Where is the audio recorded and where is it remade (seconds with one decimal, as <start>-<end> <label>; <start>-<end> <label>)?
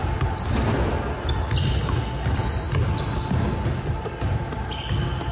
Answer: 0.0-5.3 recorded